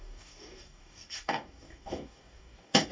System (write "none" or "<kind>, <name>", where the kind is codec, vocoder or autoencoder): codec, DAC